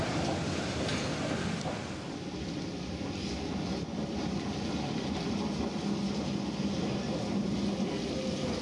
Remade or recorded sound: recorded